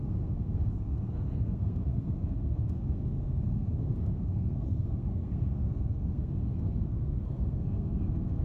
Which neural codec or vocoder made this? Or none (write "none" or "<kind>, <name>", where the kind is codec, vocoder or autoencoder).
codec, SNAC